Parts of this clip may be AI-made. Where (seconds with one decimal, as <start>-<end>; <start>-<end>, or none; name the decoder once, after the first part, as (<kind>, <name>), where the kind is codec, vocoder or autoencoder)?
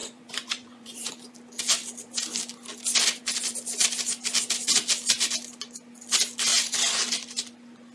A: 0.0-1.3 (vocoder, Vocos); 6.5-7.0